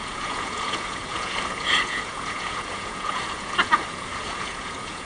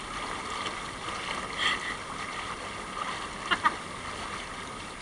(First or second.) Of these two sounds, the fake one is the first